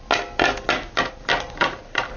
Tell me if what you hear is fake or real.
real